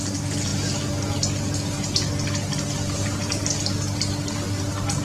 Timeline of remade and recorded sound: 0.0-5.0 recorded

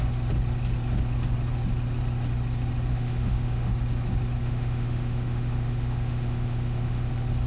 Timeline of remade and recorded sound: 0.0-2.9 recorded; 2.9-3.7 remade; 3.7-4.4 recorded; 4.4-7.1 remade; 7.1-7.5 recorded

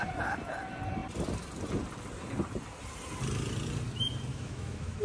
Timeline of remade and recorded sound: 0.0-4.3 recorded; 4.3-5.0 remade

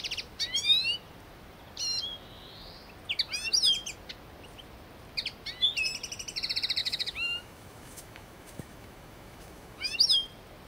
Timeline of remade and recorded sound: 0.0-6.8 recorded; 6.8-9.9 remade; 9.9-10.7 recorded

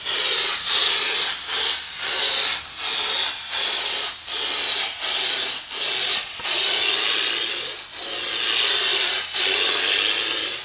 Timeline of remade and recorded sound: 0.0-10.6 recorded